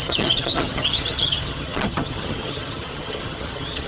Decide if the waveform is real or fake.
fake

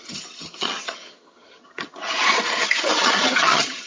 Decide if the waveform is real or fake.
fake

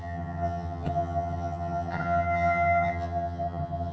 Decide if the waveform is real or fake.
fake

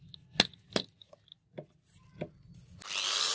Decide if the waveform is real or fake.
real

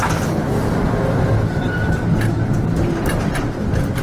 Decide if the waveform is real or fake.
real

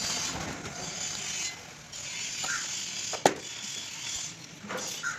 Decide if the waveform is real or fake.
real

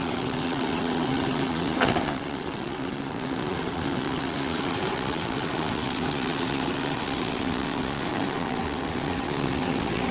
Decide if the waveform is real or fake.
fake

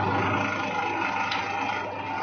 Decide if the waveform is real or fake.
real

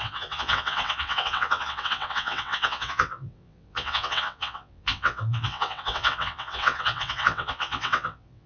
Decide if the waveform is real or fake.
fake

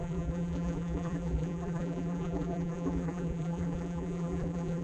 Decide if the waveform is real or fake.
fake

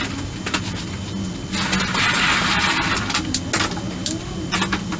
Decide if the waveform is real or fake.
real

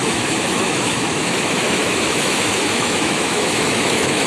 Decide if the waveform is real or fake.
fake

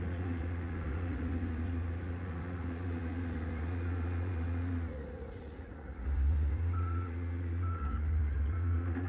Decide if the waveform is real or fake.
fake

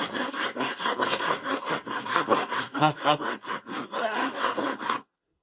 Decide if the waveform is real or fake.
fake